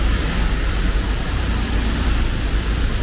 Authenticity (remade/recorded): recorded